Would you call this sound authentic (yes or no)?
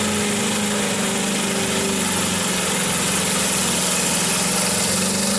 yes